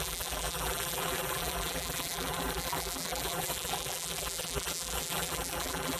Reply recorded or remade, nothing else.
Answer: remade